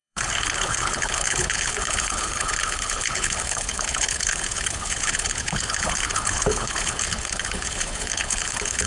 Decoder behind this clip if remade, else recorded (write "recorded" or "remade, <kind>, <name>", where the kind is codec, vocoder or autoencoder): remade, codec, HILCodec